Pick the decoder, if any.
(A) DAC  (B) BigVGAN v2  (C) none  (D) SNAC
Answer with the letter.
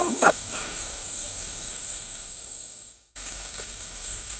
A